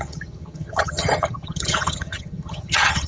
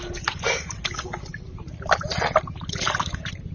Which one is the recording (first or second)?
second